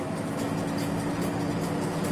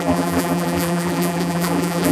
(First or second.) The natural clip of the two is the first